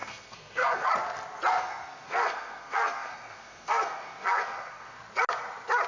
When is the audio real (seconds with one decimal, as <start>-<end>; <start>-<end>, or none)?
0.9-1.5; 5.0-5.9